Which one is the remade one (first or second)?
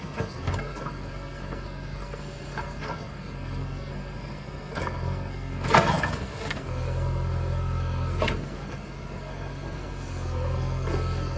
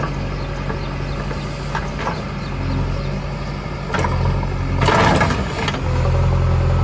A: first